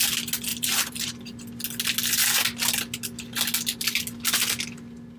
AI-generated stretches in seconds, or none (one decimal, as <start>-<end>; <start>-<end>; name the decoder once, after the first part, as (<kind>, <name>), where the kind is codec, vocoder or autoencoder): 0.5-1.2 (vocoder, BigVGAN v2)